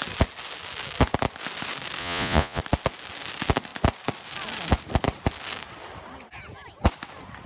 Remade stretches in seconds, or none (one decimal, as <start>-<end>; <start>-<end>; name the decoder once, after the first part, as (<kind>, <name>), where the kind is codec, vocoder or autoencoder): 2.0-2.6 (vocoder, Vocos)